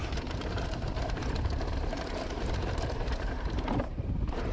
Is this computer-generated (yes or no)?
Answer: yes